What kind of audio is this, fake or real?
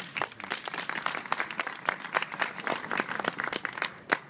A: real